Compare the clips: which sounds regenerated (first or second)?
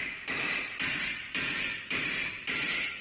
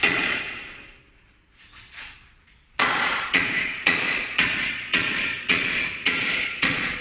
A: second